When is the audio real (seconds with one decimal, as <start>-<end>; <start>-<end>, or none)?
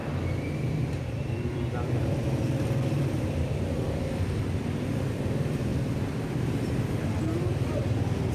none